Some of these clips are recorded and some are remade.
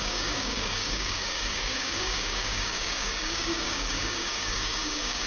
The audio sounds remade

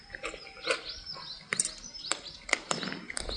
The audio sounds recorded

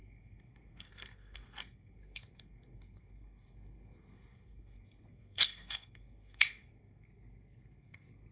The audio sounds remade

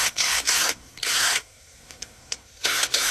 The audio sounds remade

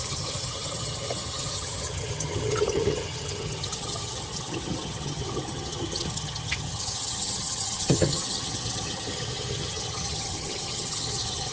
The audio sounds remade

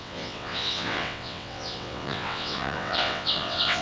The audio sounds remade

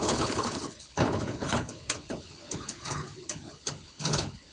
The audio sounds remade